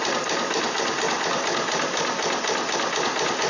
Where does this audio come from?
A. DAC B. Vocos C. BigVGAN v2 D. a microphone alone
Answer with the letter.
D